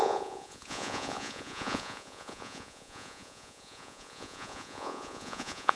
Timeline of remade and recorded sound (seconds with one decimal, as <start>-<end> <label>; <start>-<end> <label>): 0.0-5.8 remade